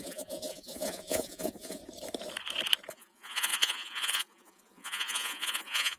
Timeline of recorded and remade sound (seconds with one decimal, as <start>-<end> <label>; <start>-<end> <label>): 0.0-1.8 remade; 1.8-2.9 recorded; 2.9-6.0 remade